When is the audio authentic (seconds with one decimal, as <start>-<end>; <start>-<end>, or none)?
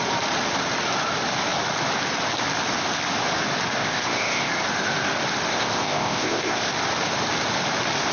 0.0-3.8; 4.5-5.5; 6.7-8.1